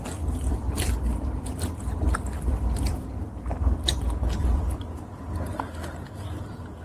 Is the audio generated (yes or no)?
yes